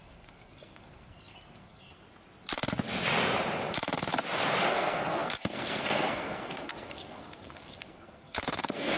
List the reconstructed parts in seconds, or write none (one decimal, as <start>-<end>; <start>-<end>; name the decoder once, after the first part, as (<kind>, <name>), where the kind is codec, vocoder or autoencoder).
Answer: 0.0-2.0 (codec, SNAC); 4.7-9.0